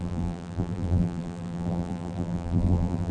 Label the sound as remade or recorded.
remade